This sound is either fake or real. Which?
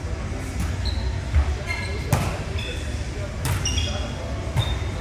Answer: real